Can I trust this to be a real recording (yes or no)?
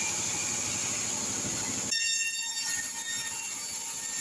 yes